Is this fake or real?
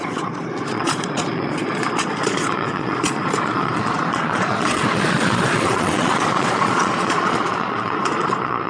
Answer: fake